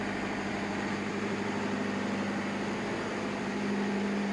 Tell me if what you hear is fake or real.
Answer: fake